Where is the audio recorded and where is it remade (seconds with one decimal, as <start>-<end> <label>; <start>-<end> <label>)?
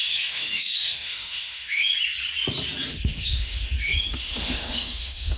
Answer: 0.0-1.9 remade; 1.9-2.9 recorded; 2.9-5.4 remade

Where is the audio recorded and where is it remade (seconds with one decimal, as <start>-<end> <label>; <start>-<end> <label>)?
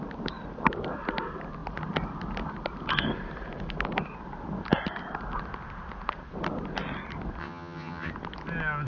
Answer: 0.0-7.4 recorded; 7.4-8.1 remade; 8.1-8.9 recorded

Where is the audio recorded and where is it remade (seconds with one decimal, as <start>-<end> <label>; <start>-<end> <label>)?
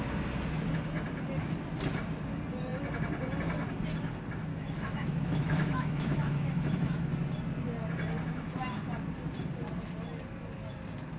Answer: 0.0-4.5 recorded; 4.5-7.0 remade; 7.0-11.2 recorded